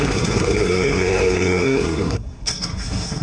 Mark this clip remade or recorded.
remade